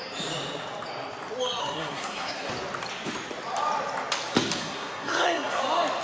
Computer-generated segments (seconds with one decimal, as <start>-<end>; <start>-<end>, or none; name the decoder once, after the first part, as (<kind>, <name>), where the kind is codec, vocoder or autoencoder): 1.6-2.5 (codec, SNAC); 4.6-5.6